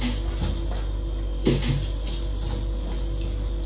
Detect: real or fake real